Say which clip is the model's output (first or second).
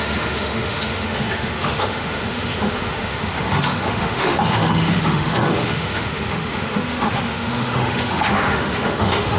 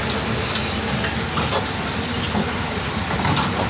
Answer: first